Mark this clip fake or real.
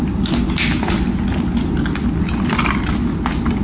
real